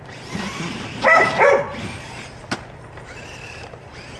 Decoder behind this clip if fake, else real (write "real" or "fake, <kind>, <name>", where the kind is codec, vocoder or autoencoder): fake, vocoder, BigVGAN v2